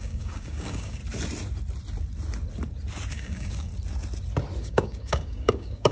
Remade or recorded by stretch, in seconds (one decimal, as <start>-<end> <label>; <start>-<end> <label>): 0.0-1.0 remade; 1.0-3.1 recorded; 3.1-3.7 remade; 3.7-4.6 recorded; 4.6-5.9 remade